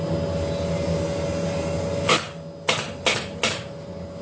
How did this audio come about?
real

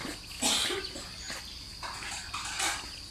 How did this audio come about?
real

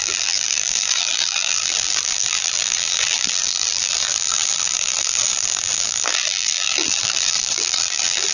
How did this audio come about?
fake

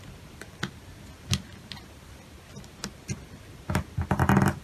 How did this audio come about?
real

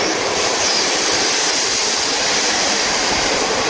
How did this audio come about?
fake